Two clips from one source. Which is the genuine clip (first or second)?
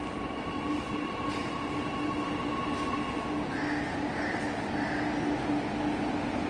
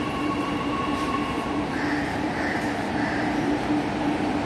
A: first